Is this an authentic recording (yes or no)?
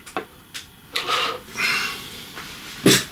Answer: yes